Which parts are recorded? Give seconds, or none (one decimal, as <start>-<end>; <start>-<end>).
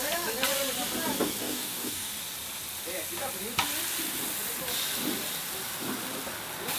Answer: 0.0-1.4; 2.1-6.8